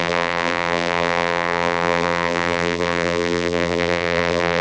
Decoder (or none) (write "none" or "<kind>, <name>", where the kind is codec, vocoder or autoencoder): vocoder, BigVGAN v2